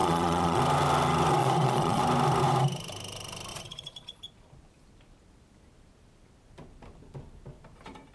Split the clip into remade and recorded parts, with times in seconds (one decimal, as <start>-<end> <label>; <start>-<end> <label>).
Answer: 0.0-0.6 remade; 0.6-1.4 recorded; 1.4-2.0 remade; 2.0-3.5 recorded; 3.5-4.2 remade; 4.2-8.1 recorded